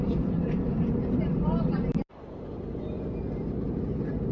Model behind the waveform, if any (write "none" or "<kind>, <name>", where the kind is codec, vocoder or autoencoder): vocoder, BigVGAN v2